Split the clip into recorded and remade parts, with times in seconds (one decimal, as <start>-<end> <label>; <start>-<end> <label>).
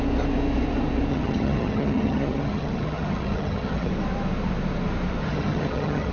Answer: 0.0-1.1 recorded; 1.1-3.9 remade; 3.9-5.2 recorded; 5.2-6.1 remade